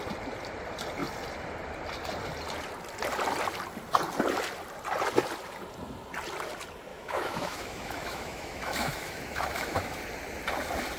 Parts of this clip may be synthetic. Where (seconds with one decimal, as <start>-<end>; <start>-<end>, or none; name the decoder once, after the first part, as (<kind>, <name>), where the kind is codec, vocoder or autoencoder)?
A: 6.9-10.0 (autoencoder, DAC-VAE)